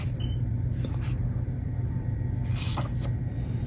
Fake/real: fake